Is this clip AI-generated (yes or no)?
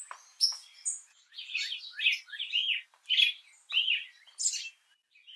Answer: no